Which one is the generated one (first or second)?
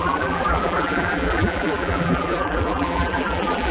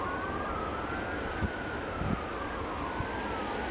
first